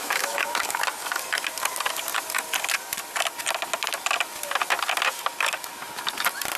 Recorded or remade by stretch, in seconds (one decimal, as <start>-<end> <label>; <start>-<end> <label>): 0.0-0.8 remade; 0.8-6.6 recorded